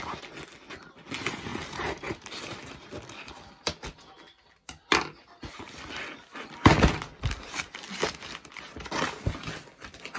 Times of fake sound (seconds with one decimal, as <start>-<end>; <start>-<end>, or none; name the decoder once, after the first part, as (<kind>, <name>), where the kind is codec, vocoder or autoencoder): 1.5-2.4 (vocoder, BigVGAN v2)